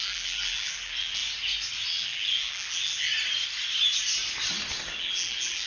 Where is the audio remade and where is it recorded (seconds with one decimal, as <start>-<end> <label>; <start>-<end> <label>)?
0.0-1.2 remade; 1.2-1.9 recorded; 1.9-3.1 remade; 3.1-5.0 recorded; 5.0-5.7 remade